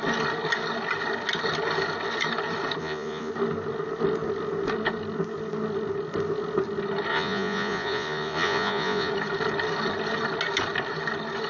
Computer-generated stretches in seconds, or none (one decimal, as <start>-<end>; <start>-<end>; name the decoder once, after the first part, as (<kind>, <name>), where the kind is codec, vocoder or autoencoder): 2.8-3.3 (vocoder, Vocos); 7.1-9.1